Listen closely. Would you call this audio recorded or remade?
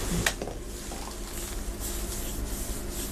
recorded